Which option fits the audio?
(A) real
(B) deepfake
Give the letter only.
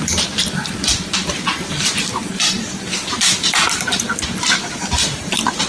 A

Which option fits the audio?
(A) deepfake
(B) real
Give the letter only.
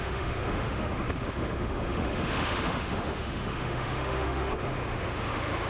A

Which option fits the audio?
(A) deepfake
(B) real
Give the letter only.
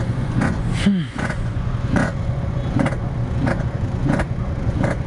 A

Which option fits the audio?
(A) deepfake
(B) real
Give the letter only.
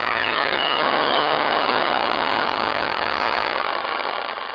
A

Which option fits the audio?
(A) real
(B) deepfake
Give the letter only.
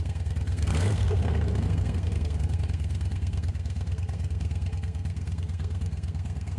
B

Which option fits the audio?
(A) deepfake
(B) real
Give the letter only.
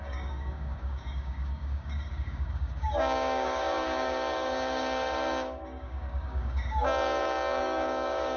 A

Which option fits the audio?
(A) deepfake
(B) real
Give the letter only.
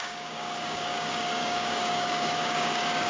A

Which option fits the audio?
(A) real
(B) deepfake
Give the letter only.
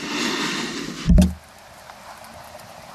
A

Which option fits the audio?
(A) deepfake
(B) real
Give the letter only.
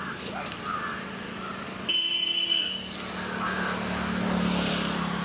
B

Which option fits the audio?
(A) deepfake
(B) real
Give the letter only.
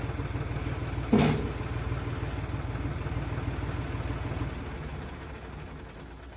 B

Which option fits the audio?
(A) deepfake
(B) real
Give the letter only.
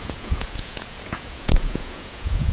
A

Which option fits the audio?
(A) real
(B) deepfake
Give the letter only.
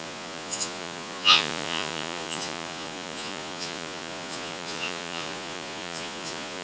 B